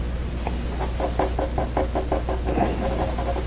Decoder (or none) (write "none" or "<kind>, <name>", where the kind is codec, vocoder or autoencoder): none